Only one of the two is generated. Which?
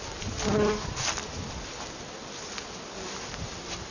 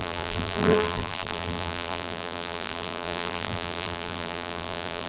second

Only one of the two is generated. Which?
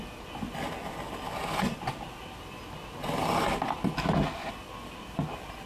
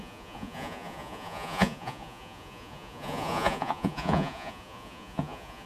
second